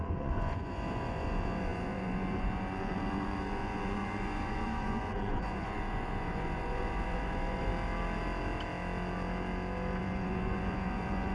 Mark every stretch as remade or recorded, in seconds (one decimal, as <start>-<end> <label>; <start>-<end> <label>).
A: 0.0-7.7 remade; 7.7-10.0 recorded; 10.0-11.3 remade